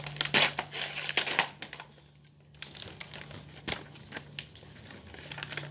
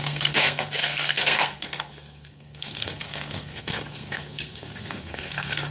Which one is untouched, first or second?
first